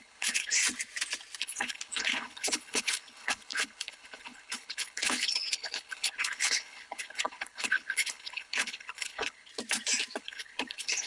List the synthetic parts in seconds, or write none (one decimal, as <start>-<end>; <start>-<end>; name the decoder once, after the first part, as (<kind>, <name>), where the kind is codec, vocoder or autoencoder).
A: 0.0-0.6 (codec, HILCodec); 1.4-9.5; 10.2-11.1